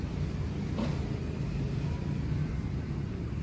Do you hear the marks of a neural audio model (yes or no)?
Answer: no